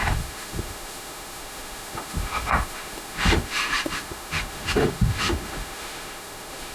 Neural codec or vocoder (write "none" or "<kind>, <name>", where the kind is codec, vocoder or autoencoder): autoencoder, DAC-VAE